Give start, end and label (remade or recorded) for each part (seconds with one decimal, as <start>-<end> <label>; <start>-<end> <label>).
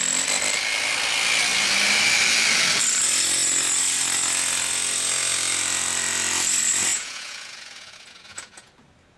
0.0-6.9 recorded; 6.9-8.7 remade; 8.7-9.2 recorded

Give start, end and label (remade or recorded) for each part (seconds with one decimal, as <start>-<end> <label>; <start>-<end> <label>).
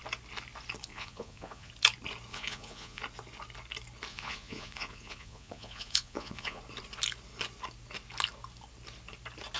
0.0-0.9 recorded; 0.9-1.7 remade; 1.7-2.3 recorded; 2.3-3.0 remade; 3.0-4.1 recorded; 4.1-6.6 remade; 6.6-9.6 recorded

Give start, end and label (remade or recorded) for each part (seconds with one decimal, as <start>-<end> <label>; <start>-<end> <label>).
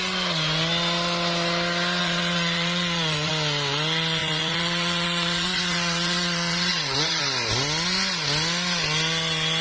0.0-2.0 recorded; 2.0-3.3 remade; 3.3-4.2 recorded; 4.2-7.2 remade; 7.2-9.6 recorded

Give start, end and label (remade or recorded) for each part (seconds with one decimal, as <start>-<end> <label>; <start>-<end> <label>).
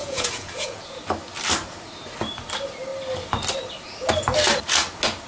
0.0-1.0 remade; 1.0-5.3 recorded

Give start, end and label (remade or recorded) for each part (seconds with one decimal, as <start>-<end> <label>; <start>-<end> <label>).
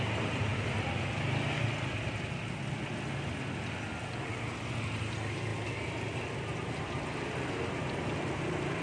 0.0-8.8 recorded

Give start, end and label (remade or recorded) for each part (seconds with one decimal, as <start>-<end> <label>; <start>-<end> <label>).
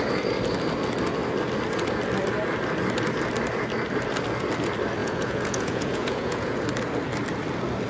0.0-5.0 recorded; 5.0-6.6 remade; 6.6-7.9 recorded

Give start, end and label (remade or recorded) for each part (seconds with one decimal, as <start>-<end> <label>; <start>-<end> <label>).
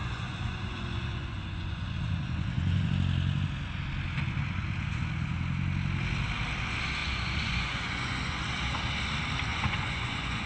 0.0-2.9 remade; 2.9-7.0 recorded; 7.0-8.4 remade; 8.4-9.5 recorded; 9.5-10.5 remade